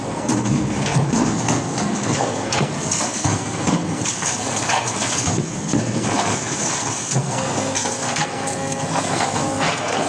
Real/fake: fake